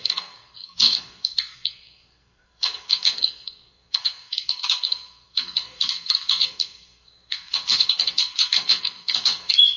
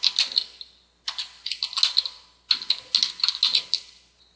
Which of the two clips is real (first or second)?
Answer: second